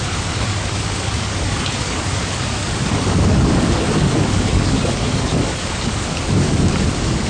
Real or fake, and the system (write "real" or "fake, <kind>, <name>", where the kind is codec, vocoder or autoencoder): fake, codec, DAC